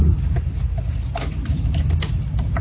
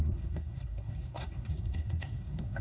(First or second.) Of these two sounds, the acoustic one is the first